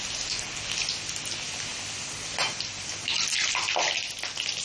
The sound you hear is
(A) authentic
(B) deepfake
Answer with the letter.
A